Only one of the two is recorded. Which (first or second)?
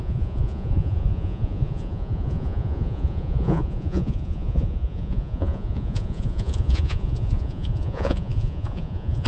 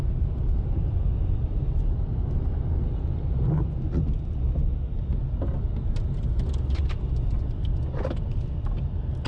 second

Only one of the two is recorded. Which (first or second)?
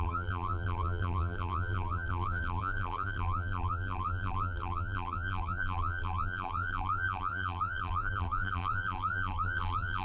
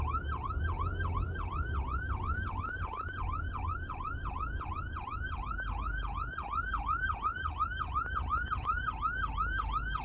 second